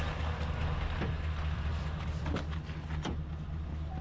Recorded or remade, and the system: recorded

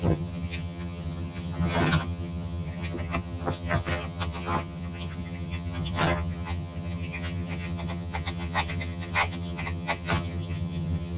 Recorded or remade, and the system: remade, vocoder, HiFi-GAN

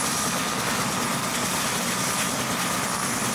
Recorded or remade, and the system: recorded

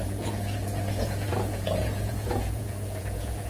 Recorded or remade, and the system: remade, vocoder, Vocos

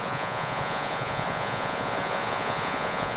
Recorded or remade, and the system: remade, vocoder, Vocos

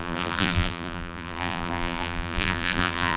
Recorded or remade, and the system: remade, vocoder, BigVGAN v2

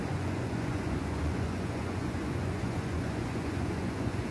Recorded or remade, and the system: remade, vocoder, Vocos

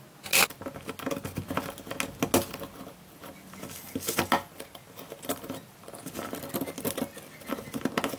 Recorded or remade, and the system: recorded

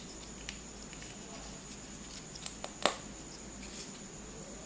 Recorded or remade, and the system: recorded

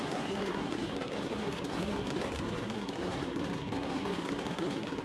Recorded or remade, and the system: remade, codec, SNAC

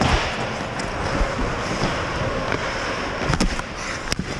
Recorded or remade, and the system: recorded